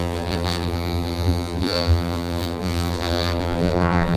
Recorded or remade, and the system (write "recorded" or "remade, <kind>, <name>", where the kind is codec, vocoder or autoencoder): remade, vocoder, BigVGAN v2